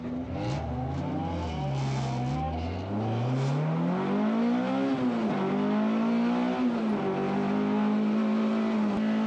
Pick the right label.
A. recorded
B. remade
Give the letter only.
A